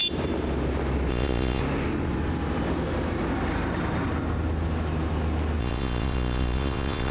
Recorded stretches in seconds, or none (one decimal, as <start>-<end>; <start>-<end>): 0.0-1.1; 1.6-5.6